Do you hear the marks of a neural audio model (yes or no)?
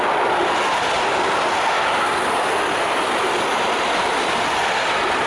no